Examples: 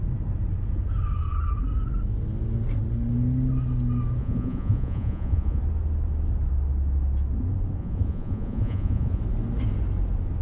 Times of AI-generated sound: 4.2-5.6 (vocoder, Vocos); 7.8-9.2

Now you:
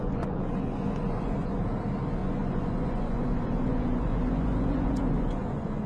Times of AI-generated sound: 0.0-1.6 (vocoder, Vocos); 2.2-5.9

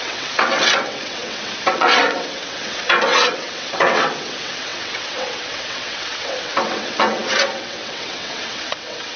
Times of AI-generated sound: 0.0-9.2 (vocoder, WaveNeXt)